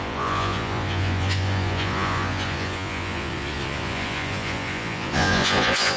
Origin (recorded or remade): remade